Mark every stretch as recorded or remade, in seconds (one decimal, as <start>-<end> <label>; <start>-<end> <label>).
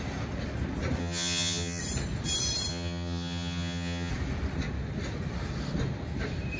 0.0-1.0 recorded; 1.0-1.8 remade; 1.8-2.7 recorded; 2.7-4.1 remade; 4.1-6.6 recorded